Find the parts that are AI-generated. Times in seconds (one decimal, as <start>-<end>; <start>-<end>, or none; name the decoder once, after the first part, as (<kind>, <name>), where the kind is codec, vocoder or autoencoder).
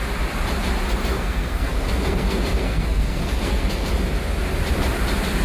1.1-3.9 (codec, SNAC)